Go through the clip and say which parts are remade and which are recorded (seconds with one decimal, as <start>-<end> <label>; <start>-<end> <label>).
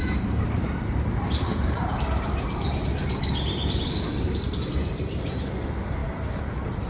0.0-1.5 recorded; 1.5-5.5 remade; 5.5-6.9 recorded